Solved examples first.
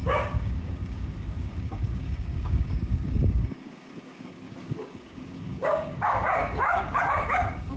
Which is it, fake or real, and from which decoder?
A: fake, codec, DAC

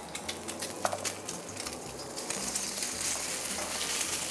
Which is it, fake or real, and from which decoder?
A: real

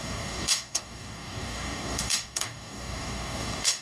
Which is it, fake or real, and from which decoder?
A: fake, codec, DAC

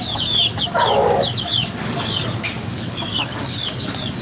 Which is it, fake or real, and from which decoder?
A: fake, codec, DAC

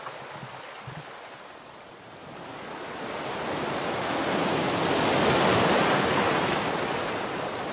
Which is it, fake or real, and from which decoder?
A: real